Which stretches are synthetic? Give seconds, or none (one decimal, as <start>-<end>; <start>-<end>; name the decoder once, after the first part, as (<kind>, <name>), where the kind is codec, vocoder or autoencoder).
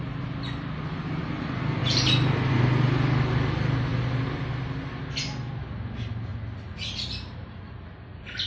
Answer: none